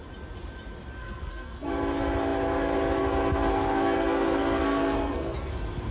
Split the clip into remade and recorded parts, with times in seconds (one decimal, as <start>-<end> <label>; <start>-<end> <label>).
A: 0.0-1.0 recorded; 1.0-1.7 remade; 1.7-3.5 recorded; 3.5-5.5 remade; 5.5-5.9 recorded